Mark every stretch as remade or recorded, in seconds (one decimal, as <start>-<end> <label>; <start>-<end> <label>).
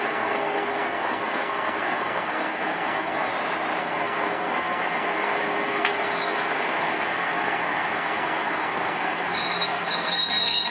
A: 0.0-3.3 remade; 3.3-3.8 recorded; 3.8-10.7 remade